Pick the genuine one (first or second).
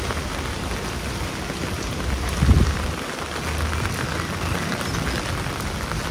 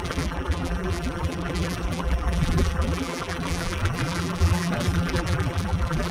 first